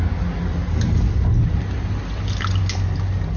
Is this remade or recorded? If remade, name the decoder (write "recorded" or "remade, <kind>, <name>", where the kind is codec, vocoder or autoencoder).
recorded